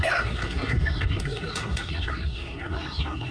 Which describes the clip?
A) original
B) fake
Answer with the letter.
B